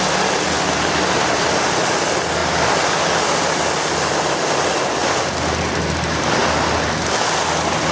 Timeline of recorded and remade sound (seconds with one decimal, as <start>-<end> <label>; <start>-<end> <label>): 0.0-7.9 recorded